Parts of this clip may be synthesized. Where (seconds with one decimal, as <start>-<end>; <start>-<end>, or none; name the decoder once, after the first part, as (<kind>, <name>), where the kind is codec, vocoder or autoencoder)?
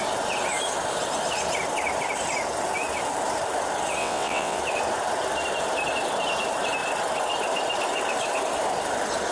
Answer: 4.0-4.6 (vocoder, WaveNeXt)